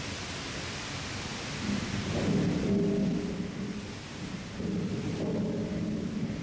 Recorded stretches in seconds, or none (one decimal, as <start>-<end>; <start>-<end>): 0.0-6.4